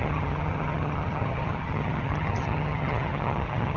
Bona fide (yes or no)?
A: no